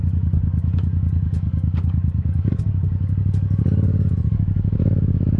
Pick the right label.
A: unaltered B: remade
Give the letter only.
B